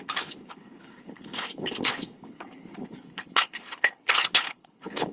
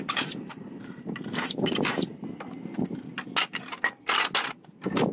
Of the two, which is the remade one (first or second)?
first